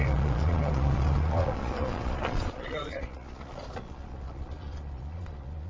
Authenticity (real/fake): fake